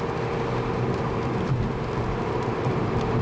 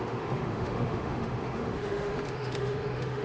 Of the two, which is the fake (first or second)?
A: second